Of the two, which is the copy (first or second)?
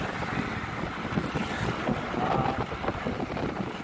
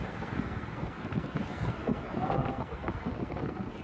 second